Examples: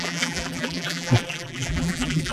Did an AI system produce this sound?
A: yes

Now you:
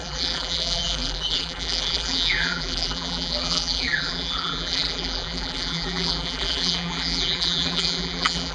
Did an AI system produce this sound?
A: yes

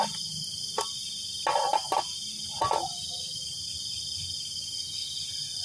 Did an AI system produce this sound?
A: no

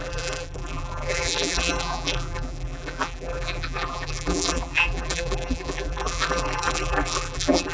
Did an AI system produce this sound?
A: yes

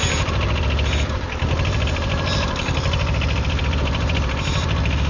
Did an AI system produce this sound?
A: yes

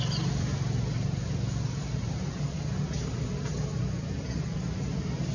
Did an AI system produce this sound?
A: no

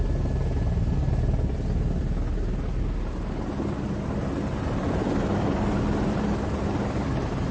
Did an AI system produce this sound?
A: no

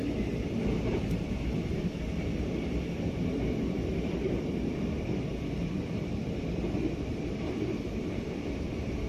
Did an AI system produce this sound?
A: yes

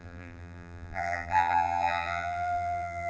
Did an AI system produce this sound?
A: yes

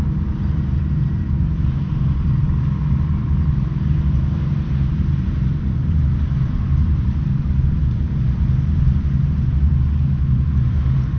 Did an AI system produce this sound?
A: yes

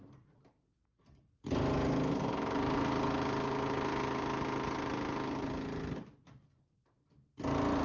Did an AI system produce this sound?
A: no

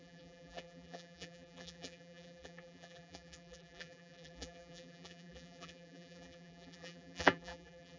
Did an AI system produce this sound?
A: yes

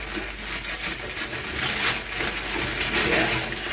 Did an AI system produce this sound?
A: no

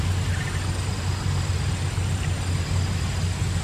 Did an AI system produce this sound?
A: no